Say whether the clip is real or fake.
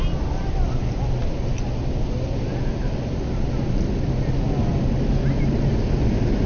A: real